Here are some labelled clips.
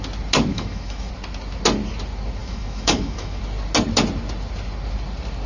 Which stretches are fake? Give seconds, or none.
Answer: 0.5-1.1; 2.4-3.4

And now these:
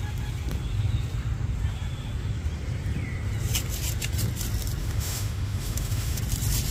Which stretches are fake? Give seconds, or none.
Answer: 4.8-6.2

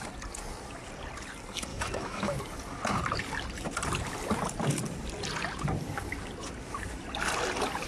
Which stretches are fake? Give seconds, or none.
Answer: 1.7-2.4

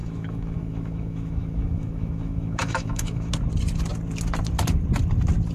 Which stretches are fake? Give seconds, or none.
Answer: 0.0-3.3

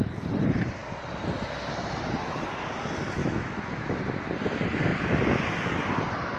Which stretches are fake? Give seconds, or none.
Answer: 3.2-4.0

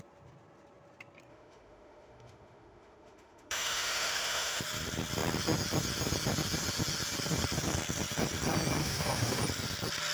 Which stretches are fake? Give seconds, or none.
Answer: 1.3-4.6; 8.8-9.4

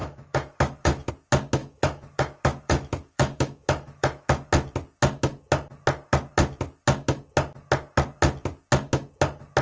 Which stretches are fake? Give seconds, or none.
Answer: 0.0-1.1; 1.6-4.5